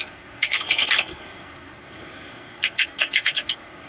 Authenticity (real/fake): fake